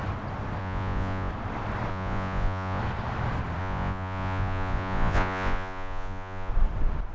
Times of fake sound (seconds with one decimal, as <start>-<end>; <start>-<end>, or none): 0.6-1.3; 1.9-2.8; 3.6-6.5